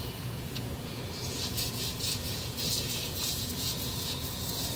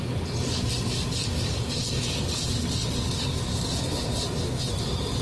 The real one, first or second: second